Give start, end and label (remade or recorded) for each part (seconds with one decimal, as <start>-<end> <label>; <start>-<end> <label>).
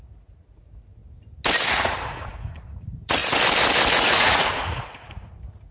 0.0-1.0 remade; 1.0-1.7 recorded; 1.7-3.2 remade; 3.2-3.9 recorded; 3.9-5.7 remade